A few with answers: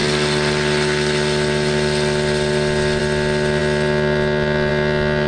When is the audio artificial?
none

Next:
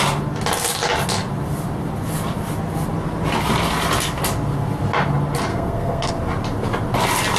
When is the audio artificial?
5.5-6.1 (codec, SNAC)

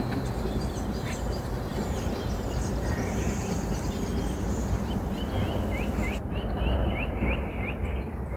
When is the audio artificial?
none

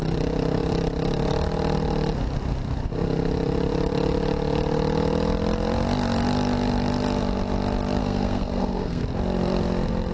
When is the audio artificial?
8.0-9.0 (codec, SNAC)

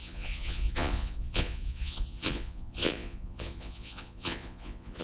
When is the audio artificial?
0.0-5.0 (vocoder, Vocos)

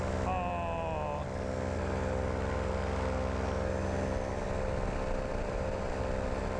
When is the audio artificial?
5.3-5.9 (vocoder, BigVGAN v2)

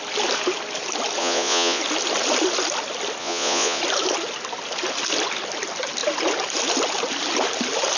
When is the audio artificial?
1.2-1.8 (vocoder, Vocos); 3.2-3.8